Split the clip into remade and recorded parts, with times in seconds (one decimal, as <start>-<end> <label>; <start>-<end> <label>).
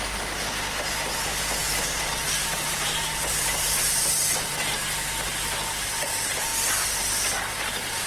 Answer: 0.0-1.6 recorded; 1.6-4.5 remade; 4.5-8.1 recorded